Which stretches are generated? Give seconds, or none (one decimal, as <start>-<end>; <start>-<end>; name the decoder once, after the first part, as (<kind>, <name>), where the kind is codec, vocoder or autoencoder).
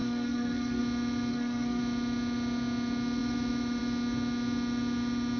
0.0-0.8 (codec, SNAC); 1.3-1.8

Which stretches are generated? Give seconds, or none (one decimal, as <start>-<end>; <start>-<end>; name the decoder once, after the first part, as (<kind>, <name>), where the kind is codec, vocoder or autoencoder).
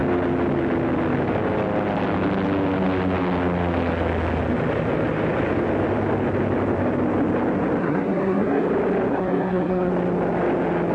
7.8-8.7 (codec, SNAC); 9.1-9.9